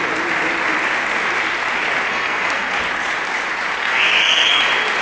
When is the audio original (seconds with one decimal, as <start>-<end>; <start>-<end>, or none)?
0.0-2.1; 2.7-3.8; 4.6-5.0